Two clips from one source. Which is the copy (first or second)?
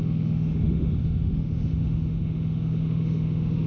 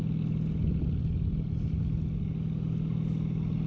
first